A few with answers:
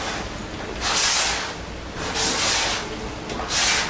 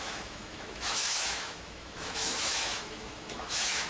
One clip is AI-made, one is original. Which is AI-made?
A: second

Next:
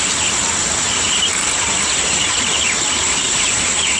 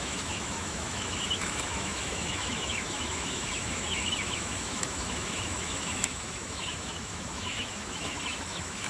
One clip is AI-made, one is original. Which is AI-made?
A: second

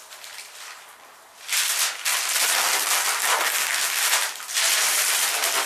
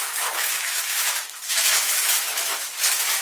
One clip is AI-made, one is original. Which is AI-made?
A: second